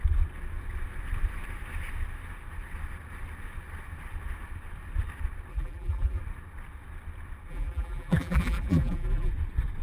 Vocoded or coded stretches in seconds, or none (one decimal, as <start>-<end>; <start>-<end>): 5.5-6.2; 7.5-9.3